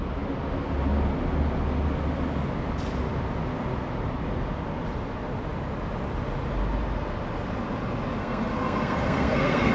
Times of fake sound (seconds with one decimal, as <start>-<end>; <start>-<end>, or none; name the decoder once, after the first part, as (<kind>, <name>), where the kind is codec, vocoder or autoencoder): 8.2-9.7 (codec, SNAC)